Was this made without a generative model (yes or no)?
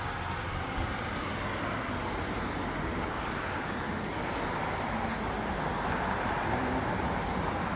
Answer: yes